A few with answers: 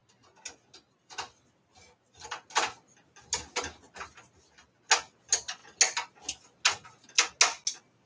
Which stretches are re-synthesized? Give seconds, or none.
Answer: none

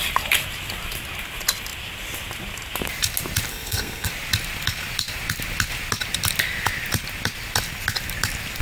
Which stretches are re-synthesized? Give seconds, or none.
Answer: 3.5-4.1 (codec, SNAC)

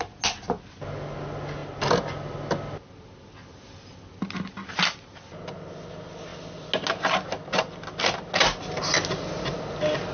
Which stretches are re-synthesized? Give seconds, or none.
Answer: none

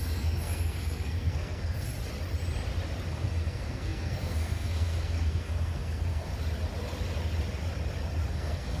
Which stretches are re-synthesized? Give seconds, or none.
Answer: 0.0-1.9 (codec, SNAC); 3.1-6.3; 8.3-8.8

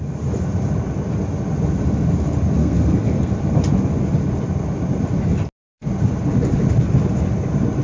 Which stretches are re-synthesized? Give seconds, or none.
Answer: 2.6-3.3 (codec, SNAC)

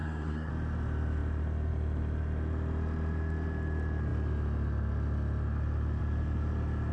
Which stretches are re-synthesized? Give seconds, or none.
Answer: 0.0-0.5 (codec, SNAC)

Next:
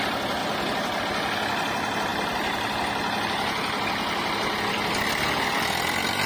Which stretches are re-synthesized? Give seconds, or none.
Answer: none